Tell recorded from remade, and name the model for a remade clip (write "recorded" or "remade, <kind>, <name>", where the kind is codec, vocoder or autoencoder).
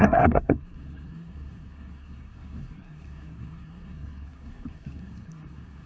remade, codec, SNAC